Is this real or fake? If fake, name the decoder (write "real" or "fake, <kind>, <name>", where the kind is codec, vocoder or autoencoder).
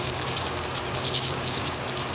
fake, codec, DAC